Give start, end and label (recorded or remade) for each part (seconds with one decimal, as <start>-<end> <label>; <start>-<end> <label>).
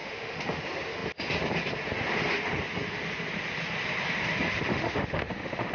0.0-0.6 remade; 0.6-4.7 recorded; 4.7-5.7 remade